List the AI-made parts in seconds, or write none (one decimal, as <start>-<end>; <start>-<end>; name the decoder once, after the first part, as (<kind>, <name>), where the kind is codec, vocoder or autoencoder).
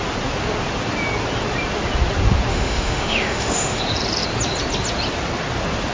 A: 2.5-3.8 (autoencoder, DAC-VAE)